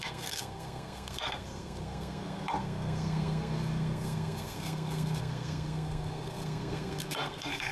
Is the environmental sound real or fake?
fake